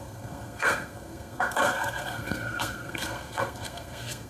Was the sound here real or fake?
fake